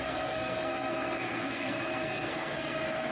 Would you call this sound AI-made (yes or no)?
yes